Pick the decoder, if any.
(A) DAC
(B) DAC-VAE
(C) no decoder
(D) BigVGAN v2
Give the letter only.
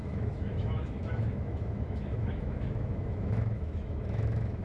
B